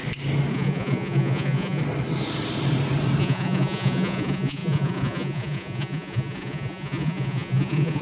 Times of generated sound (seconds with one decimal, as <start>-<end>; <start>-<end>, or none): 0.5-1.8; 3.2-8.0